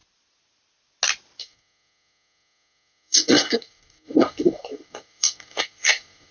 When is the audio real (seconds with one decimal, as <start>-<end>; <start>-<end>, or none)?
0.0-1.4